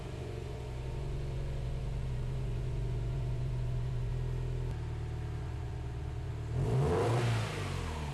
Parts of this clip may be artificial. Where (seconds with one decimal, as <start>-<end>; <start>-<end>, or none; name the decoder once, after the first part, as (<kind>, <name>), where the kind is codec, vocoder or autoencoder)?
0.0-4.1 (vocoder, Vocos); 5.4-6.3